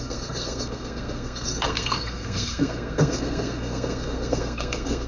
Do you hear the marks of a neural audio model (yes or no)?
yes